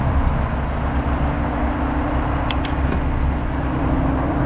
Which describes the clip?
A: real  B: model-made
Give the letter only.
A